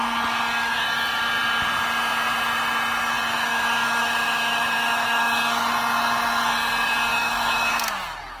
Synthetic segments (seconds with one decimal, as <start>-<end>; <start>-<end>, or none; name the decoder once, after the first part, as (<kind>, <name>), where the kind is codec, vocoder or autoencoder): 3.3-5.7 (autoencoder, DAC-VAE); 7.1-7.7